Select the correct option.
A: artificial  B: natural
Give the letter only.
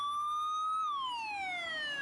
B